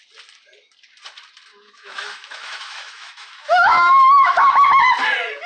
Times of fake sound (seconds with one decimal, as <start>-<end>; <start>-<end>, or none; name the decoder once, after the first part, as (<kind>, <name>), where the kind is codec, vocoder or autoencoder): 1.5-4.8 (autoencoder, DAC-VAE)